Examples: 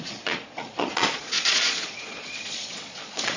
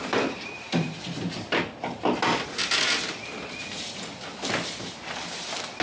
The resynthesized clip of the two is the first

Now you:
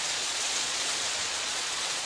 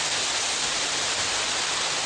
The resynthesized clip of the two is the first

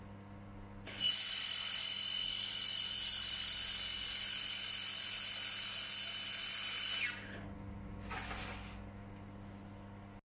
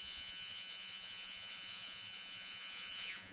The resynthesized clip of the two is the second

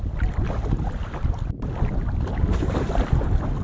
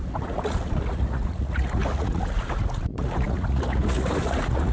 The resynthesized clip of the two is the second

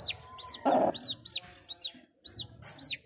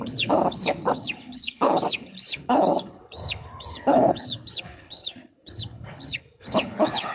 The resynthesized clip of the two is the second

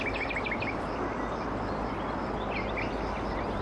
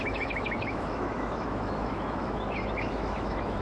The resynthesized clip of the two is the second